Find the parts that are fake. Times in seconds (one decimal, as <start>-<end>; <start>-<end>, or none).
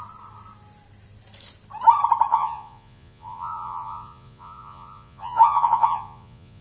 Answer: 2.3-6.6